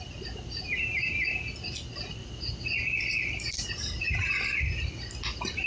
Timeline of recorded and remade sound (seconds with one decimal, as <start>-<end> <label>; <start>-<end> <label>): 0.0-5.7 recorded